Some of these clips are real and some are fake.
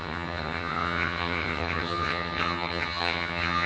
fake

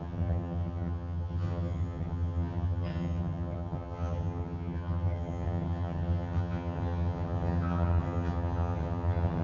fake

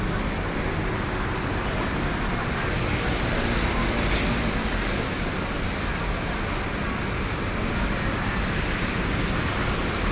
real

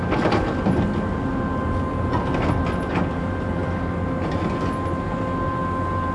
real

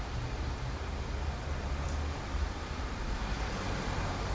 real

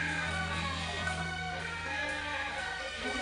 fake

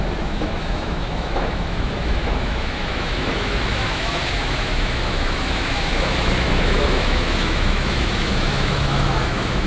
fake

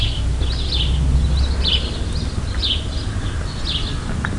real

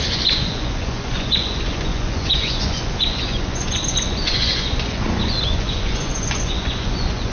fake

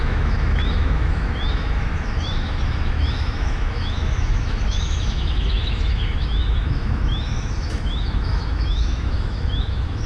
fake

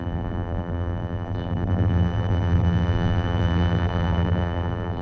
fake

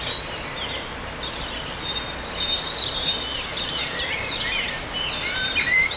real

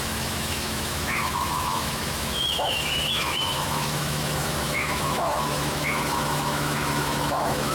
fake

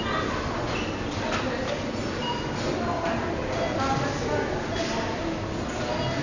real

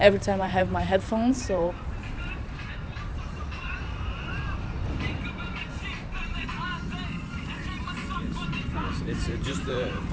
fake